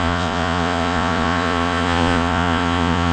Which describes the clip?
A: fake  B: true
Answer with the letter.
A